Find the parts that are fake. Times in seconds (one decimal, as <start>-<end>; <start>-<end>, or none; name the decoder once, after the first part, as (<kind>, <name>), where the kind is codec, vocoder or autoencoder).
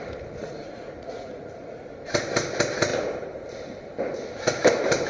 0.4-1.9 (vocoder, Vocos)